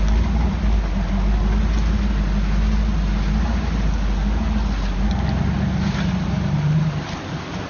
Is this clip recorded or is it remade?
recorded